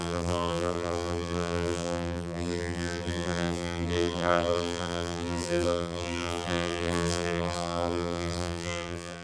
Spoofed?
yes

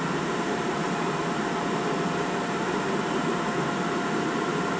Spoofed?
yes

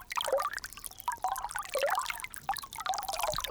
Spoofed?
no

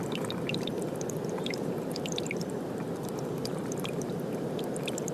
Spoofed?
yes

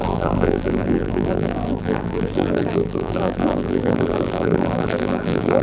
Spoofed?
yes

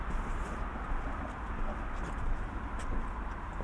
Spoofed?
no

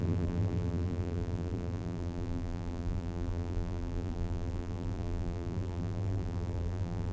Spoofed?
yes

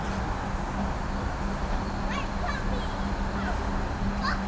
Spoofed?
no